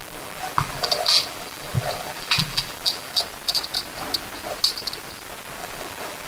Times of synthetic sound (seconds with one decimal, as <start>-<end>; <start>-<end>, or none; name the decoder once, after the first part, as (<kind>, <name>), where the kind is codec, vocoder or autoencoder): 0.0-3.2 (vocoder, BigVGAN v2); 5.6-6.3